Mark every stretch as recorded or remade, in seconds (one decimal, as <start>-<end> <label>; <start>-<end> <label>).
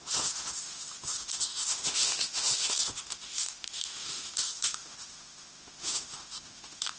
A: 0.0-7.0 remade